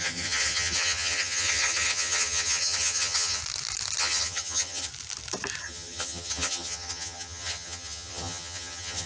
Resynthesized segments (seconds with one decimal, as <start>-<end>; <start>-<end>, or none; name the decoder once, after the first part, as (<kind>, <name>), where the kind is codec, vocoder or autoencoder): 0.0-3.4 (vocoder, HiFi-GAN); 4.0-4.9; 5.6-9.1